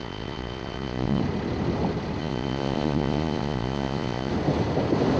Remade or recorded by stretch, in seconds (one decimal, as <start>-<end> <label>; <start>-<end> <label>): 0.0-1.2 remade; 1.2-2.2 recorded; 2.2-4.3 remade; 4.3-5.2 recorded